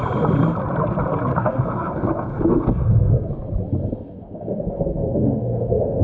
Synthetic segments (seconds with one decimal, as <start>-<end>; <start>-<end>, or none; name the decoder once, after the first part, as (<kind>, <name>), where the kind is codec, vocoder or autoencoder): 1.3-3.3 (codec, SNAC); 3.8-6.0